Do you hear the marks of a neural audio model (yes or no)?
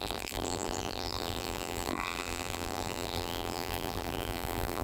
yes